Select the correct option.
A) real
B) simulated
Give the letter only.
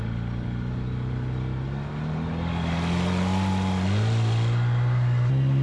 A